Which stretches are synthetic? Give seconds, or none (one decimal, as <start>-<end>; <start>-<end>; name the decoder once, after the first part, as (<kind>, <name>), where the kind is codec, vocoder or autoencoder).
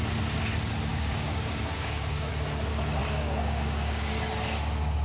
0.9-2.3 (codec, DAC); 3.0-4.2